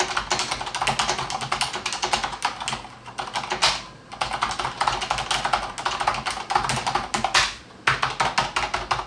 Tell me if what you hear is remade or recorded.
recorded